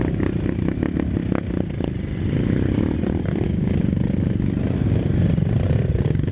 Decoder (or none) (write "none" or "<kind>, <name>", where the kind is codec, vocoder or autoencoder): none